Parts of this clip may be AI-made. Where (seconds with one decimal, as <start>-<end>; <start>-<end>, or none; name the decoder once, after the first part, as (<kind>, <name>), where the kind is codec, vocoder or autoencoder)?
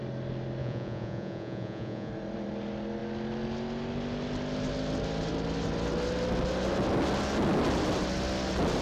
0.6-2.1 (vocoder, Vocos)